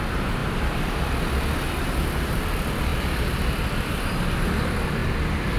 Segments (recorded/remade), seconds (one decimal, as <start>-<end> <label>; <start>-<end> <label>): 0.0-0.4 recorded; 0.4-2.3 remade; 2.3-2.9 recorded; 2.9-3.9 remade; 3.9-5.6 recorded